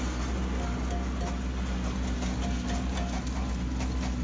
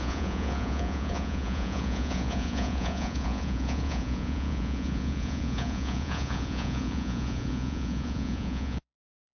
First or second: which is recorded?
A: first